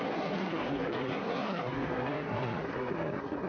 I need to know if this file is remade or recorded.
remade